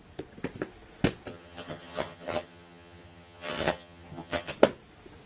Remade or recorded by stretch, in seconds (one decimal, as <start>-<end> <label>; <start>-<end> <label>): 0.0-1.3 recorded; 1.3-4.5 remade; 4.5-5.3 recorded